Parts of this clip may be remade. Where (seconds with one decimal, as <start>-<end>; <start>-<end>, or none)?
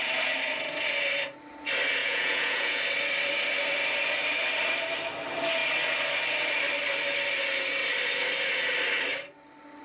2.0-2.8